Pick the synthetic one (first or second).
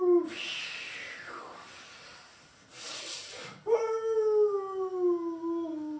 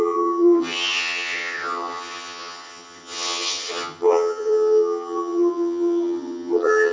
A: second